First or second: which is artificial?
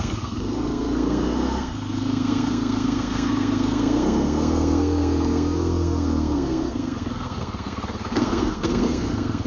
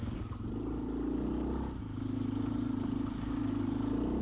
first